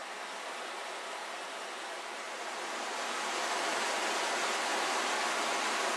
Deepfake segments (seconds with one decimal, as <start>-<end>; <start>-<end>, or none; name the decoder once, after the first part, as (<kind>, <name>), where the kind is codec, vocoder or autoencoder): none